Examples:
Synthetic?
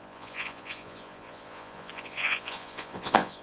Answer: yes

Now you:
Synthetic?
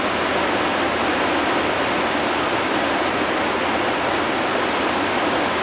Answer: no